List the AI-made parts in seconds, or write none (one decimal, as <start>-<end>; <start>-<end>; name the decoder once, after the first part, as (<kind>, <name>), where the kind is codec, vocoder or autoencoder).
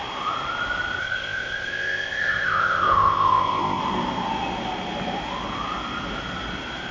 1.0-3.8 (codec, ZipCodec)